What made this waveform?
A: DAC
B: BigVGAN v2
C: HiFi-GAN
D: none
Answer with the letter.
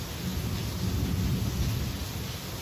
D